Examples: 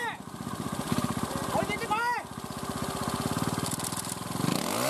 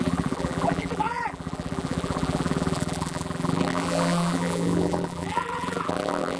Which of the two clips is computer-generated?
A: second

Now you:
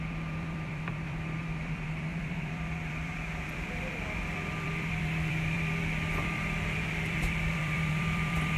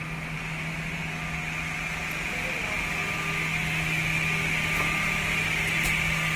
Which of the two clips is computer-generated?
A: first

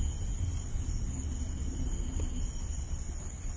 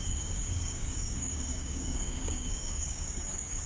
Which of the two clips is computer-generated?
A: second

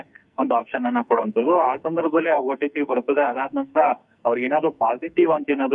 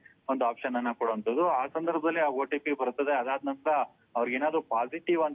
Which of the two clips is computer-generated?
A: first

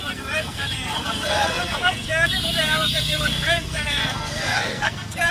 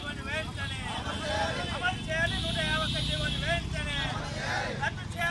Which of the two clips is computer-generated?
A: first